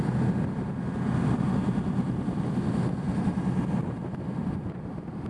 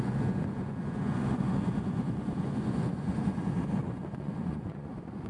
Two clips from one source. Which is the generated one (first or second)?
second